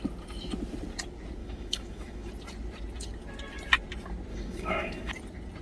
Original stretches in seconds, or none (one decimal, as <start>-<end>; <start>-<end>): 0.0-1.4; 2.3-4.3; 5.1-5.6